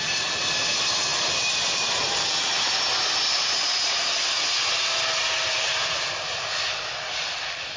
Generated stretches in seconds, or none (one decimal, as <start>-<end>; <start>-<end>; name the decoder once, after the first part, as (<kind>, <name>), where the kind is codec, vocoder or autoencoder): none